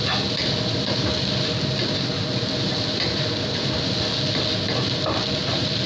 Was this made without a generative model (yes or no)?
yes